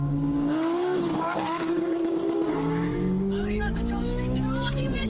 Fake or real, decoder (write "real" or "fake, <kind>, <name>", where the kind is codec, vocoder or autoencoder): fake, codec, DAC